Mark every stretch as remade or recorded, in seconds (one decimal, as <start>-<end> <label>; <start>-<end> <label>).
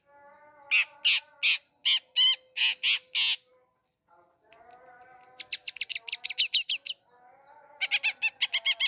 0.0-8.9 recorded